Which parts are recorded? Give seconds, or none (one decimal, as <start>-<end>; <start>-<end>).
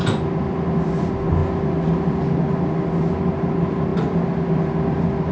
0.0-5.3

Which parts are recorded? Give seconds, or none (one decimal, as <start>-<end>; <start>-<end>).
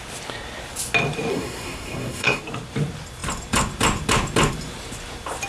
0.0-1.3; 2.4-5.5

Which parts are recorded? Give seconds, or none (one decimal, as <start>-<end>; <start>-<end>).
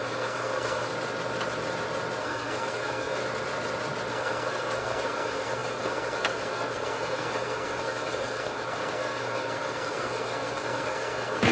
0.9-2.2; 3.2-4.1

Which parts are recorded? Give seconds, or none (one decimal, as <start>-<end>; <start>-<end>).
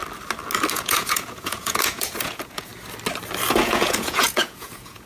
0.0-0.7; 2.7-3.5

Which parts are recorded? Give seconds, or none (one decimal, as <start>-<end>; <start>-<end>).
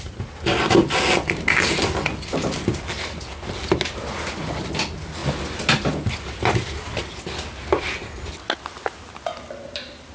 0.0-10.1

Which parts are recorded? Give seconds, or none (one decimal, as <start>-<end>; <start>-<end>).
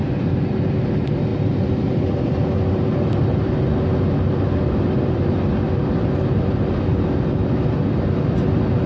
0.0-1.3; 2.2-8.9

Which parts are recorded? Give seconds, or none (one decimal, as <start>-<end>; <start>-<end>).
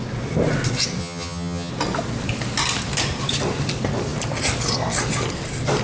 0.0-1.0; 1.7-5.8